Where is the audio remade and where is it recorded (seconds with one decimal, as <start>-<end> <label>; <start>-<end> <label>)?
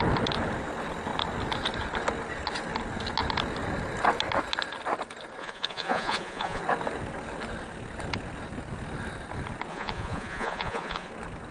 0.0-5.4 recorded; 5.4-6.6 remade; 6.6-9.7 recorded; 9.7-11.1 remade; 11.1-11.5 recorded